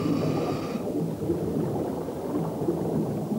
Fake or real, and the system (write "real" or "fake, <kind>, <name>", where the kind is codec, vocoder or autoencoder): real